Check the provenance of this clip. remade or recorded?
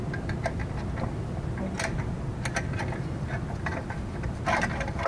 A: recorded